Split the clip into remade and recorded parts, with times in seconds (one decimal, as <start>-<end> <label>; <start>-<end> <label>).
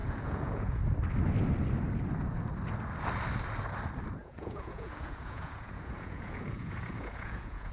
0.0-0.8 remade; 0.8-4.2 recorded; 4.2-7.7 remade